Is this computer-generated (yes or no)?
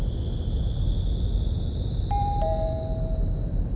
no